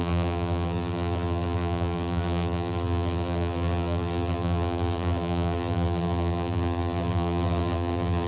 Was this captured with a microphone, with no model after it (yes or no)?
no